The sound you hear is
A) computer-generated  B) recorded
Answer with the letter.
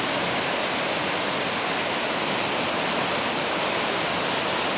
B